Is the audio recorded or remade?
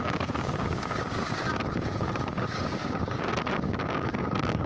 remade